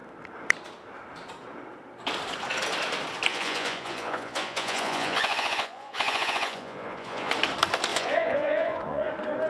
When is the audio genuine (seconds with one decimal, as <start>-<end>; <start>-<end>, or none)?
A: 0.0-3.3; 7.3-7.9; 9.1-9.5